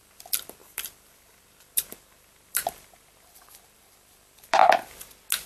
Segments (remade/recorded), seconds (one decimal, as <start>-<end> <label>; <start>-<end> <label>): 0.0-4.6 remade; 4.6-5.5 recorded